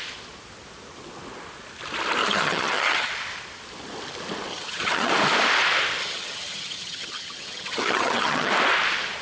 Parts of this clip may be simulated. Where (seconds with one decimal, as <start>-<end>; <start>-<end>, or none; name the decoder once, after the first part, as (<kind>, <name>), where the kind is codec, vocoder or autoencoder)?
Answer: 2.2-3.1 (vocoder, HiFi-GAN); 4.5-5.1; 6.0-8.5